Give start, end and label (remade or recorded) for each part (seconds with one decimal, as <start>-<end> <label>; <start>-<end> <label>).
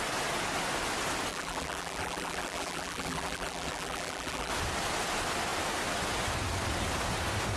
0.0-1.3 recorded; 1.3-4.5 remade; 4.5-7.6 recorded